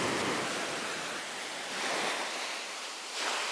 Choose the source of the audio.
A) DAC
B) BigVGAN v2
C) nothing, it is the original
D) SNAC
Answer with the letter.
C